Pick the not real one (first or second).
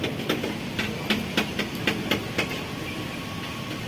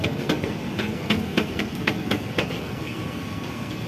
second